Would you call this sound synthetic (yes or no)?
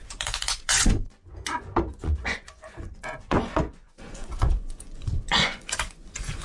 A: yes